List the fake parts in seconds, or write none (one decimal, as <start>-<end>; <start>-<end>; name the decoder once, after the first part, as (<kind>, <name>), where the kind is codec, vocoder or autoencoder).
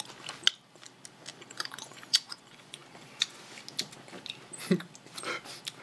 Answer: 1.3-3.4 (vocoder, Vocos)